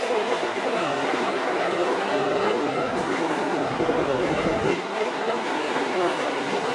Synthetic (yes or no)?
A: yes